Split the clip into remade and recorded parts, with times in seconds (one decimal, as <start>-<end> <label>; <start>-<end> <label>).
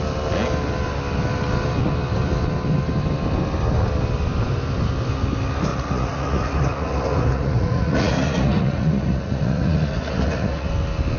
0.0-5.7 recorded; 5.7-10.7 remade; 10.7-11.2 recorded